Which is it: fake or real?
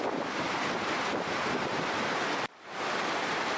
fake